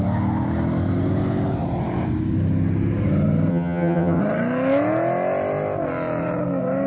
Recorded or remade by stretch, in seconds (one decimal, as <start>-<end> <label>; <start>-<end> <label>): 0.0-3.5 recorded; 3.5-4.2 remade; 4.2-6.9 recorded

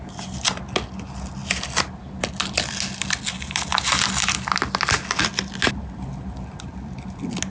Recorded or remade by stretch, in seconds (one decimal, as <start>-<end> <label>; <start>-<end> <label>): 0.0-7.5 recorded